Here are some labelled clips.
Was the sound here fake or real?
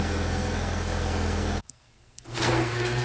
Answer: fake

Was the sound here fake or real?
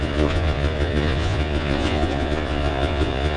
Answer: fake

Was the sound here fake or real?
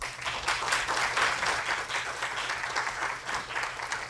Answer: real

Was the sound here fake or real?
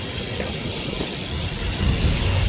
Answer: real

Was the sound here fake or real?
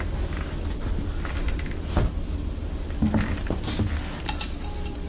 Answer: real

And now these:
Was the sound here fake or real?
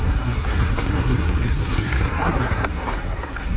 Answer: fake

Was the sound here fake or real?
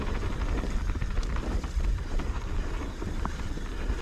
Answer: real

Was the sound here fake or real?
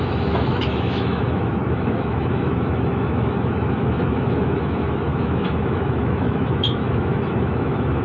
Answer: fake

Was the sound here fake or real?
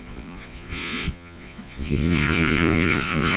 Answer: fake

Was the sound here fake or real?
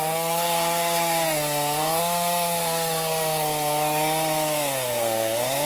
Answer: fake